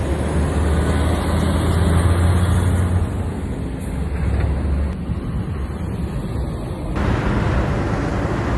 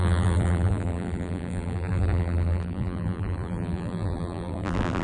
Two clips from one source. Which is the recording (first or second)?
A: first